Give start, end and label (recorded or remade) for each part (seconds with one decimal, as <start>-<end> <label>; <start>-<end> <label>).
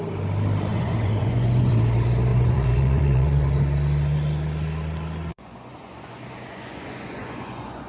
0.0-0.7 recorded; 0.7-1.7 remade; 1.7-2.3 recorded; 2.3-3.4 remade; 3.4-5.3 recorded; 5.3-7.9 remade